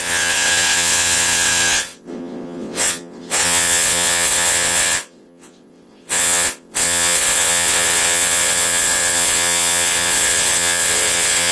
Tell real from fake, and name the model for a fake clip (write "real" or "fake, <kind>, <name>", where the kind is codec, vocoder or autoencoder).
fake, vocoder, WaveNeXt